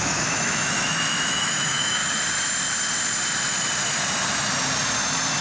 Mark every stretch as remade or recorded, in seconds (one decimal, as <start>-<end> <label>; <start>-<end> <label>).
0.0-2.0 remade; 2.0-5.4 recorded